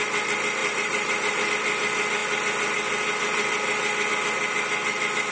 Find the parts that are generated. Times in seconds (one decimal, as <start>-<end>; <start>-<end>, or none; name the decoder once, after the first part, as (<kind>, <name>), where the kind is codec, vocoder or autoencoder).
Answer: 0.6-1.5 (vocoder, BigVGAN v2)